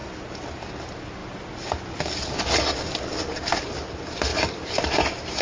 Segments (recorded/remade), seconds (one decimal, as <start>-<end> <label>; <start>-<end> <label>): 0.0-4.3 recorded; 4.3-5.4 remade